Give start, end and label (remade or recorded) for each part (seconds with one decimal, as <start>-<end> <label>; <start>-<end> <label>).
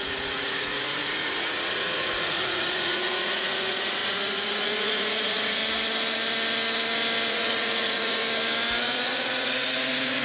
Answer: 0.0-5.6 remade; 5.6-7.3 recorded; 7.3-8.2 remade; 8.2-8.8 recorded; 8.8-10.2 remade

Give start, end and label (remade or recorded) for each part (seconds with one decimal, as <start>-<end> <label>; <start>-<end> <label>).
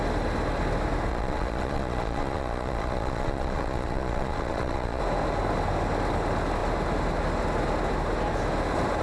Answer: 0.0-1.1 recorded; 1.1-5.0 remade; 5.0-9.0 recorded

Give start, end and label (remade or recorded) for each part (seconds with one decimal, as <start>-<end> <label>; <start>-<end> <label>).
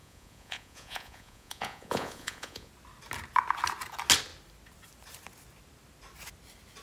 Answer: 0.0-2.7 remade; 2.7-6.8 recorded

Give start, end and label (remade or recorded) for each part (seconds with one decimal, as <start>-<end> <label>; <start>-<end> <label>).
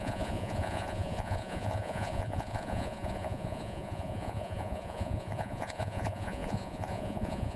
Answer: 0.0-7.6 remade